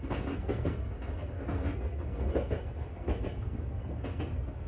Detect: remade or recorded remade